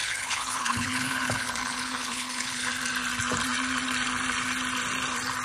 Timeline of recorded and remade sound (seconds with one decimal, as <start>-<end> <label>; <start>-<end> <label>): 0.0-2.7 remade; 2.7-5.4 recorded